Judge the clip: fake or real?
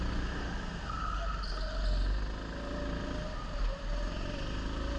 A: real